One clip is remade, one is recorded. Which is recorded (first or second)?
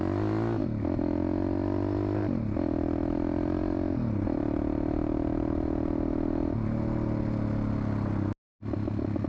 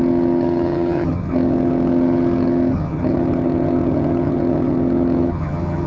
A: first